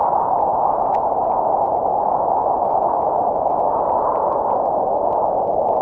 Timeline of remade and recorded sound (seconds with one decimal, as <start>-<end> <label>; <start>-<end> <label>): 0.0-0.5 recorded; 0.5-1.2 remade; 1.2-1.9 recorded; 1.9-3.7 remade; 3.7-5.8 recorded